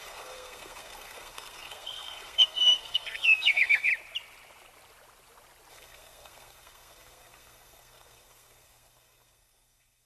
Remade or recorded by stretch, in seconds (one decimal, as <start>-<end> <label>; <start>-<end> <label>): 0.0-3.9 remade; 3.9-5.7 recorded; 5.7-10.1 remade